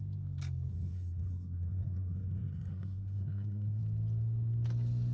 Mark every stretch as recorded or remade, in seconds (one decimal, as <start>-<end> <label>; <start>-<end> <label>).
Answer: 0.0-0.7 recorded; 0.7-3.8 remade; 3.8-5.1 recorded